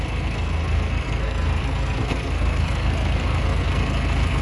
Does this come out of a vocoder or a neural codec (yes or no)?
yes